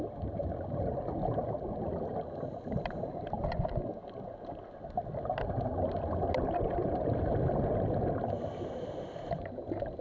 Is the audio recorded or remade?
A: recorded